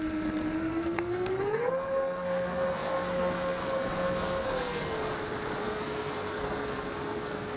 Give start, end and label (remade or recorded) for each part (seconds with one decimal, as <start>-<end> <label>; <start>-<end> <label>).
0.0-0.7 recorded; 0.7-5.1 remade; 5.1-5.6 recorded; 5.6-7.6 remade